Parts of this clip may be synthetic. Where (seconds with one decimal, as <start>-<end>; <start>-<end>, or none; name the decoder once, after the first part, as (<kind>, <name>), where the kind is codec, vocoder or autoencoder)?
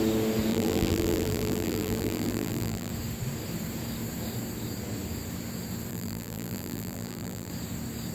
0.5-2.9 (vocoder, BigVGAN v2); 5.9-7.5